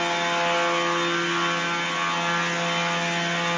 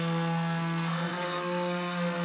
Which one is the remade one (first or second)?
second